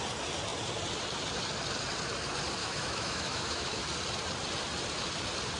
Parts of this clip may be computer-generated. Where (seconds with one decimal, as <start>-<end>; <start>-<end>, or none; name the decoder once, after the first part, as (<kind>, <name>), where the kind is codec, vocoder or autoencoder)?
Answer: 2.6-3.8 (autoencoder, DAC-VAE)